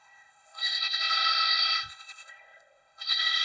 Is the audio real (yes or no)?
no